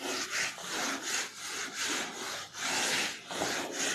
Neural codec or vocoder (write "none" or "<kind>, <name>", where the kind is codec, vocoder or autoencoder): none